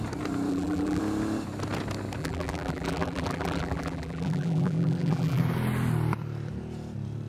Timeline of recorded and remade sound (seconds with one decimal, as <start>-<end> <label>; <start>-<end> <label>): 0.0-0.5 recorded; 0.5-1.0 remade; 1.0-2.2 recorded; 2.2-5.4 remade; 5.4-7.3 recorded